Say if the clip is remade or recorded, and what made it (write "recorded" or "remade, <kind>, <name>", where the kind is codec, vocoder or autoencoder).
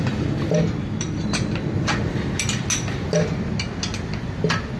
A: recorded